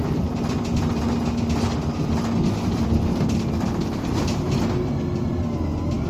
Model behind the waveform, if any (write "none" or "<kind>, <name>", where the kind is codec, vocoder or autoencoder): none